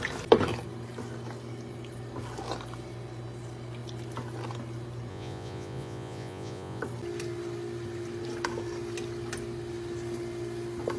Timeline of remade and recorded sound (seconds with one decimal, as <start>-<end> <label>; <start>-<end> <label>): 0.0-5.1 recorded; 5.1-6.8 remade; 6.8-11.0 recorded